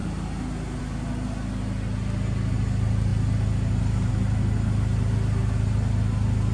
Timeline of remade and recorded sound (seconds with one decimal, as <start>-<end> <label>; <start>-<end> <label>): 0.0-6.5 recorded

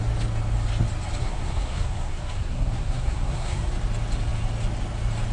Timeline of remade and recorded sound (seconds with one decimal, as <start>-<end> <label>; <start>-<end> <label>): 0.0-1.2 recorded; 1.2-3.7 remade; 3.7-5.3 recorded